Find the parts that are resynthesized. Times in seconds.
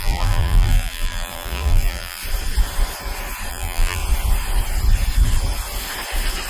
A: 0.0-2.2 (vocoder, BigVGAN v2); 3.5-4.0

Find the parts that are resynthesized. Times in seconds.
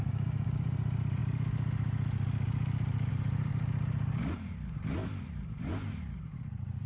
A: 0.0-1.2 (vocoder, BigVGAN v2); 3.1-3.5; 5.3-6.9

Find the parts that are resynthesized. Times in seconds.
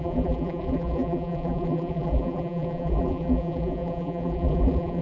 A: 0.0-5.0 (vocoder, BigVGAN v2)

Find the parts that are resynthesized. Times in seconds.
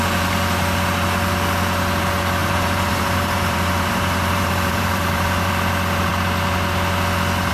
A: 2.4-5.5 (vocoder, BigVGAN v2)